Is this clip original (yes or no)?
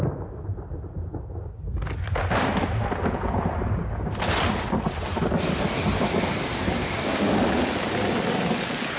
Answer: yes